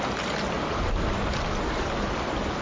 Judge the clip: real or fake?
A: real